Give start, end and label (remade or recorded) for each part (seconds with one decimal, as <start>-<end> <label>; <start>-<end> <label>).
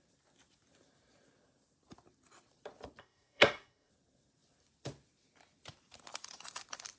0.0-3.0 recorded; 3.0-3.9 remade; 3.9-7.0 recorded